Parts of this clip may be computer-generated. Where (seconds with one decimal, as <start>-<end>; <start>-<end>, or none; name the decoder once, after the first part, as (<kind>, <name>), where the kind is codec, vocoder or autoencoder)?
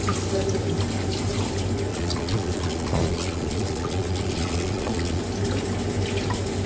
1.9-5.2 (vocoder, Vocos)